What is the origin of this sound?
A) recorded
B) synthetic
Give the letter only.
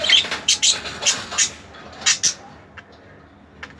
A